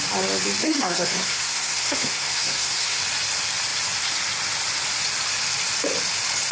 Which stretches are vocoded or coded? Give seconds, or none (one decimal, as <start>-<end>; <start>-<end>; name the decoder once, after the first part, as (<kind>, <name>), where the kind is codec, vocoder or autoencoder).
0.6-3.0 (codec, SNAC)